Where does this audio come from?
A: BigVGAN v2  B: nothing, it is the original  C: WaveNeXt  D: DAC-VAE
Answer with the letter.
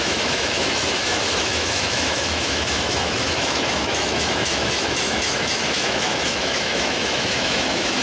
D